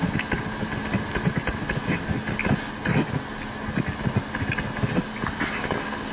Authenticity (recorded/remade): recorded